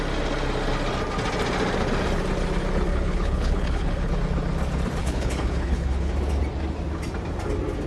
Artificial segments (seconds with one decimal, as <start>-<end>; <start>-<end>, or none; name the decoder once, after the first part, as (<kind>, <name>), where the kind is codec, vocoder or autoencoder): 2.9-4.1 (codec, HILCodec); 5.0-6.1

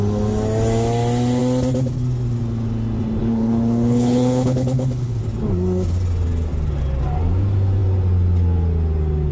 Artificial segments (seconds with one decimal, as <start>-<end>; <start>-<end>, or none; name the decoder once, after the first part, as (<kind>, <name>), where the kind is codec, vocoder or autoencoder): 3.2-5.2 (codec, HILCodec)